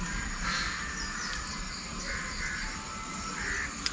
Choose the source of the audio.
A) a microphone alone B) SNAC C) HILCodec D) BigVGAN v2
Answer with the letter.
A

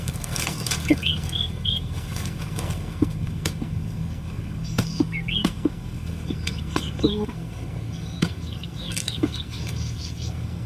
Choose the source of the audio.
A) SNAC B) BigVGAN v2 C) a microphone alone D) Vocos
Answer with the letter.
A